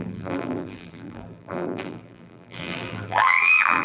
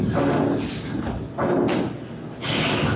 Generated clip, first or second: first